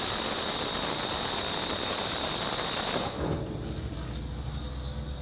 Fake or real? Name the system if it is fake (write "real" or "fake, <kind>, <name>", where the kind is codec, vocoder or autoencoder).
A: real